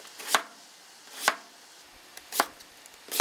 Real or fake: real